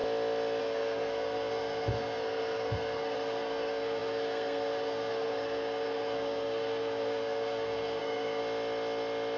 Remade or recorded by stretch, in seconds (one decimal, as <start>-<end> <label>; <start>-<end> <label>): 0.0-0.6 recorded; 0.6-8.4 remade; 8.4-9.4 recorded